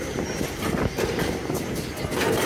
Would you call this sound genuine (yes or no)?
yes